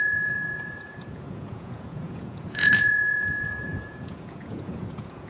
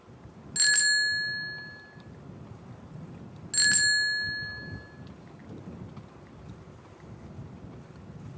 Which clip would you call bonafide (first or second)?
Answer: second